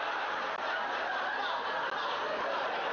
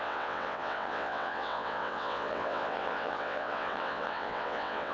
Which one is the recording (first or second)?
first